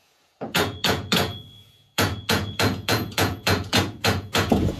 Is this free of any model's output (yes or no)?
no